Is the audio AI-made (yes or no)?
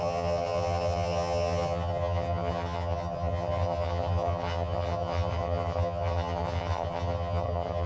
yes